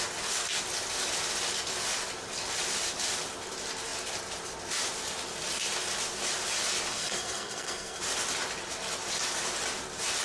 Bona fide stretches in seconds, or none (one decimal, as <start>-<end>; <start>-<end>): 0.0-6.9; 8.0-10.2